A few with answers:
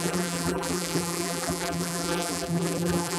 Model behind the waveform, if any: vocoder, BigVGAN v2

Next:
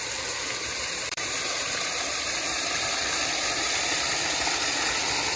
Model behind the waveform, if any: vocoder, BigVGAN v2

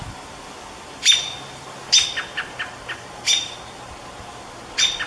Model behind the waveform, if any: none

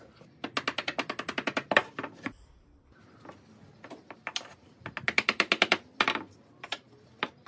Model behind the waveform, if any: none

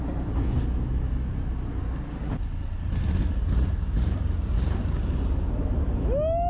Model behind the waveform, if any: none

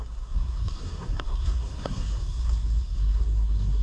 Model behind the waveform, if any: codec, SNAC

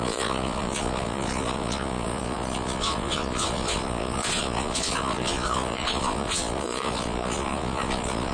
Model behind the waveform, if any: vocoder, Vocos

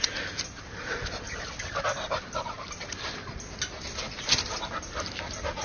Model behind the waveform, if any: none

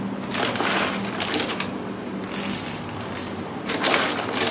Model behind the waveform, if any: none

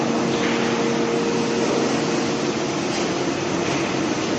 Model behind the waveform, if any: none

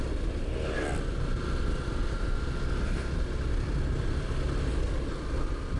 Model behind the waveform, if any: none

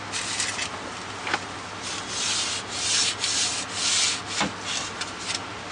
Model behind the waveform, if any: none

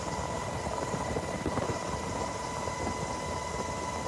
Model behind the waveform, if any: none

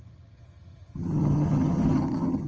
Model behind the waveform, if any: vocoder, HiFi-GAN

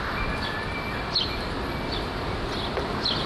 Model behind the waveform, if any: none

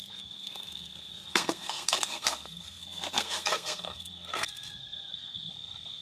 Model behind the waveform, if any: codec, SNAC